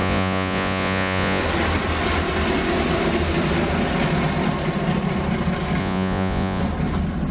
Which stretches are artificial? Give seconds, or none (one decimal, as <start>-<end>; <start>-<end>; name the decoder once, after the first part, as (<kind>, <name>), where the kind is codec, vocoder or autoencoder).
0.0-1.4 (vocoder, Vocos); 5.8-6.6